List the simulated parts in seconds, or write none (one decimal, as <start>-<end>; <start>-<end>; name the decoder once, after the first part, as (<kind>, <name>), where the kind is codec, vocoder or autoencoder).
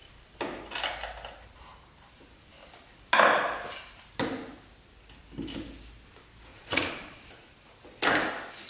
6.5-7.2 (vocoder, Vocos)